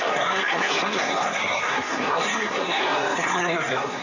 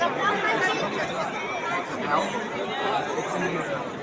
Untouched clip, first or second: second